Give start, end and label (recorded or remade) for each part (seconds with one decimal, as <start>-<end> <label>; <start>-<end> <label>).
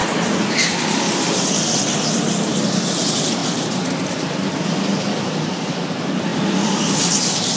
0.0-0.5 recorded; 0.5-3.4 remade; 3.4-4.1 recorded; 4.1-7.6 remade